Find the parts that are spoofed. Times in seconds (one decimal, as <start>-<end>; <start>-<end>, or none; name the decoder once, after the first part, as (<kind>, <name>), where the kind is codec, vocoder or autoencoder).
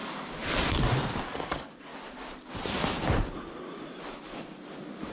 1.3-1.9 (codec, DAC)